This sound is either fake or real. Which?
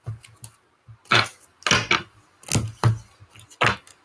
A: real